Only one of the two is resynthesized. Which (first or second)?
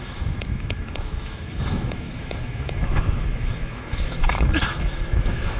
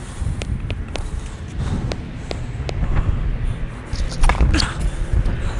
first